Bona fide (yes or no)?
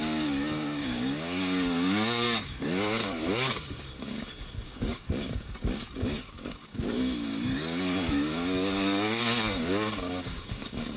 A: no